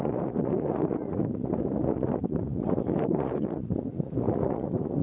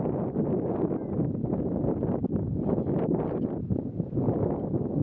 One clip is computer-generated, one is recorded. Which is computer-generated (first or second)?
first